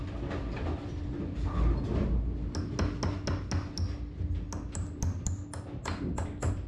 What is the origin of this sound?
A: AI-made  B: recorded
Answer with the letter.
B